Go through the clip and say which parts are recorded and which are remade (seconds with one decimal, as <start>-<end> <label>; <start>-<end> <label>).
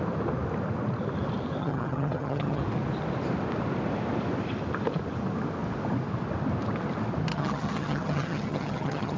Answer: 0.0-1.6 recorded; 1.6-2.6 remade; 2.6-7.3 recorded; 7.3-9.2 remade